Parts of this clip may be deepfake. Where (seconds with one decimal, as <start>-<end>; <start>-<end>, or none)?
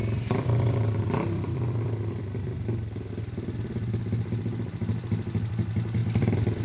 0.0-3.1; 6.0-6.6